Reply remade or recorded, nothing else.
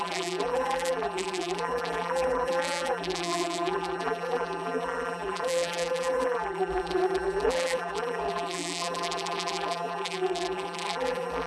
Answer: remade